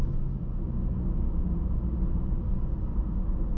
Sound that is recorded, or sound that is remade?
recorded